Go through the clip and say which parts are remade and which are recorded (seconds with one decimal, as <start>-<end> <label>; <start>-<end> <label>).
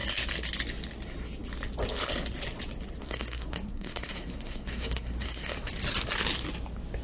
0.0-3.0 recorded; 3.0-5.7 remade; 5.7-7.0 recorded